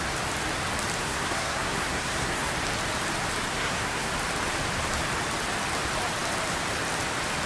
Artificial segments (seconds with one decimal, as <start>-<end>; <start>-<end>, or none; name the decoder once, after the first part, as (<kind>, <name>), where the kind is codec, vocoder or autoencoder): 1.0-2.5 (codec, SNAC); 3.5-4.1